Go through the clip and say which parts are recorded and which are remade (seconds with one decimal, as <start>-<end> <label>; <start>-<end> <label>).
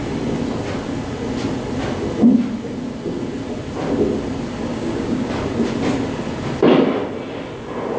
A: 0.0-4.7 recorded; 4.7-5.3 remade; 5.3-8.0 recorded